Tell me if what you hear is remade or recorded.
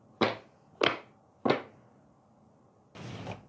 recorded